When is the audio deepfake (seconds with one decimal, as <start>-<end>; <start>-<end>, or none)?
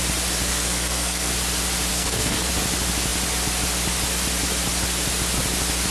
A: 0.5-1.3; 1.9-2.5